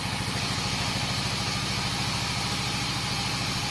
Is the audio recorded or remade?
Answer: recorded